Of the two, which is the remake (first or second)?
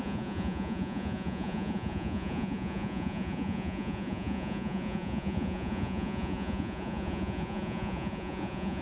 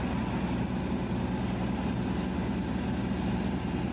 first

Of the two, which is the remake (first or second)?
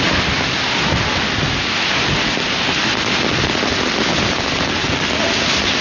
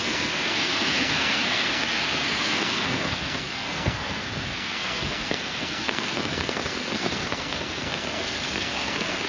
second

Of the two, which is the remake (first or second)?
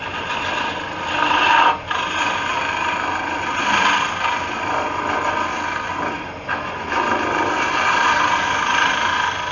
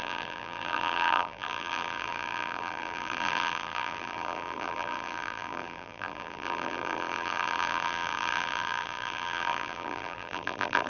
second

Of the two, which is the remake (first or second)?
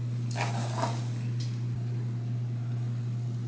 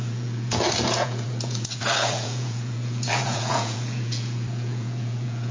second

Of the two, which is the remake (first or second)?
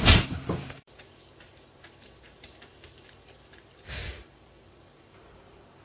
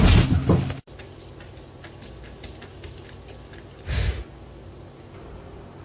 first